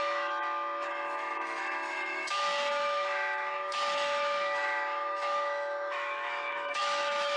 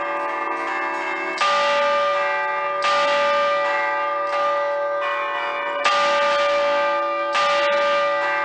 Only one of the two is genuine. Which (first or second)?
second